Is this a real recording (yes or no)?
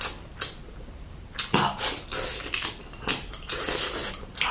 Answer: yes